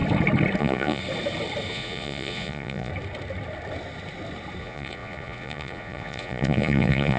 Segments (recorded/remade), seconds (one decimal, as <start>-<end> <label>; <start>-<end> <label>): 0.0-0.6 recorded; 0.6-1.0 remade; 1.0-1.7 recorded; 1.7-2.9 remade; 2.9-4.6 recorded; 4.6-7.2 remade